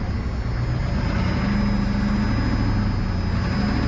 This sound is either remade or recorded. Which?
recorded